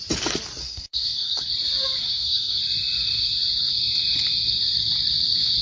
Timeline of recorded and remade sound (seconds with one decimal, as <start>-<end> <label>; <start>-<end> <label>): 0.0-0.6 recorded; 0.6-1.5 remade; 1.5-2.0 recorded; 2.0-2.6 remade; 2.6-5.6 recorded